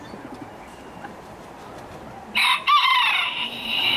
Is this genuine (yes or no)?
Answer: yes